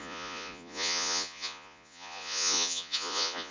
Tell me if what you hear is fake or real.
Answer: fake